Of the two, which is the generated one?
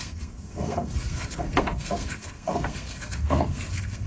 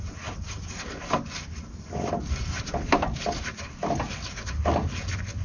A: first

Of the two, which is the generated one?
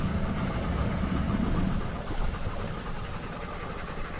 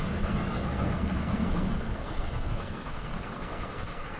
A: second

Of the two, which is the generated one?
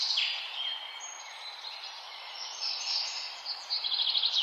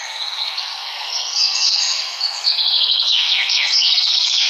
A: second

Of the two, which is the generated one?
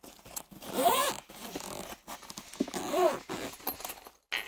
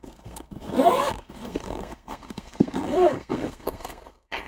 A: second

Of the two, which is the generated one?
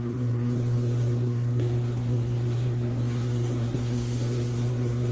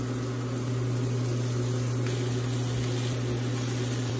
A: first